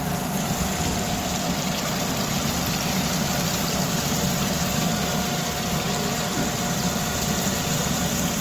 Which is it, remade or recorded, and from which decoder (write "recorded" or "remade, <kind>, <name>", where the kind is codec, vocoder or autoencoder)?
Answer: recorded